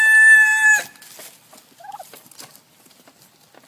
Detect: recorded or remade recorded